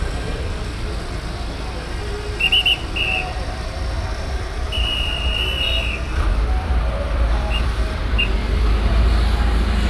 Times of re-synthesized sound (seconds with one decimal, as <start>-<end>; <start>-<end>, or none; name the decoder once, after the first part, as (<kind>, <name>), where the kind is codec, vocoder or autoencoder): 2.6-4.6 (vocoder, BigVGAN v2); 6.6-7.6